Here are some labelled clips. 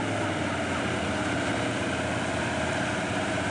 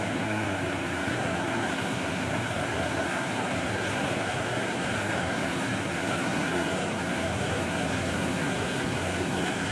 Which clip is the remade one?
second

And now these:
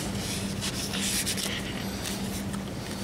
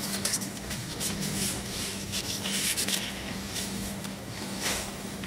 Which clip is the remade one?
second